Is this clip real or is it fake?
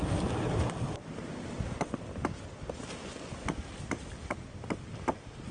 real